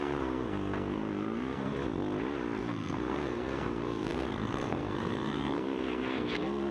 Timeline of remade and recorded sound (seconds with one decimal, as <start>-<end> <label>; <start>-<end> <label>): 0.0-1.7 remade; 1.7-2.6 recorded; 2.6-6.7 remade

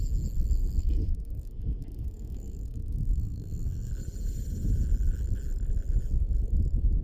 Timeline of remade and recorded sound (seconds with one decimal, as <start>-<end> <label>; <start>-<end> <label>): 0.0-0.6 recorded; 0.6-3.9 remade; 3.9-7.0 recorded

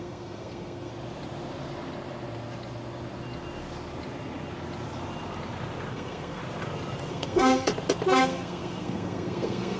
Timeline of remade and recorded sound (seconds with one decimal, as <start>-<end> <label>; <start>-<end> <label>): 0.0-0.9 remade; 0.9-5.9 recorded; 5.9-6.4 remade; 6.4-7.1 recorded; 7.1-7.7 remade; 7.7-8.2 recorded; 8.2-9.8 remade

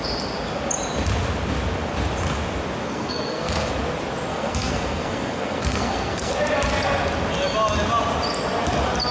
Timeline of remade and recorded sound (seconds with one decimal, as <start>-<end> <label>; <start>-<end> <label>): 0.0-2.8 recorded; 2.8-3.7 remade; 3.7-4.3 recorded; 4.3-6.3 remade; 6.3-9.1 recorded

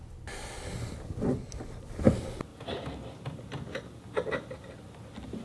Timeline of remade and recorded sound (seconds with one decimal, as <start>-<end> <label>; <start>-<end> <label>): 0.0-5.4 recorded

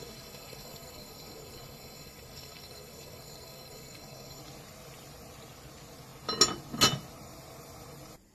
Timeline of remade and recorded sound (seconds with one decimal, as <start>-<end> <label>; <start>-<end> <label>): 0.0-4.4 remade; 4.4-8.3 recorded

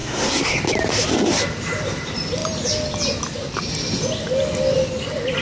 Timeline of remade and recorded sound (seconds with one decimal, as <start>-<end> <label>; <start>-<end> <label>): 0.0-0.6 remade; 0.6-5.4 recorded